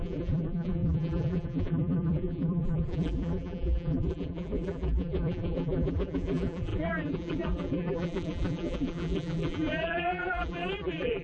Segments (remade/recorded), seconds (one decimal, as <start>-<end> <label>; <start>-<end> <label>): 0.0-11.2 remade

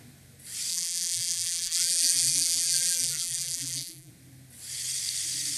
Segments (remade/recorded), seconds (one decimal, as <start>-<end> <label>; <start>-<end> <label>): 0.0-0.7 recorded; 0.7-4.1 remade; 4.1-5.6 recorded

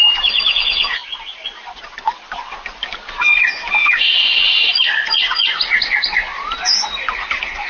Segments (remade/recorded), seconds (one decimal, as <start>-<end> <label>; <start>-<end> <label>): 0.0-7.7 recorded